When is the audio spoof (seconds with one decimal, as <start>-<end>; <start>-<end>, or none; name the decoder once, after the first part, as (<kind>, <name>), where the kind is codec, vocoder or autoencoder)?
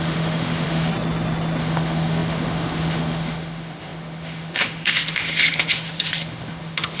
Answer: 0.0-0.9 (autoencoder, DAC-VAE); 1.6-7.0